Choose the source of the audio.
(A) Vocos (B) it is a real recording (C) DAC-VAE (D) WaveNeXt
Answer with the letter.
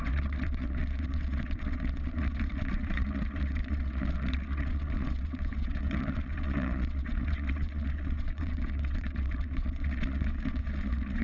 D